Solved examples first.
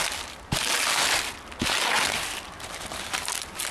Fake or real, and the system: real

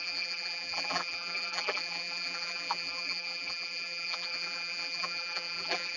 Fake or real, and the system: fake, vocoder, BigVGAN v2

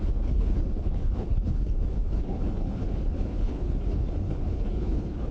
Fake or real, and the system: fake, codec, HILCodec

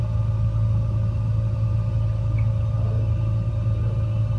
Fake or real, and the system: real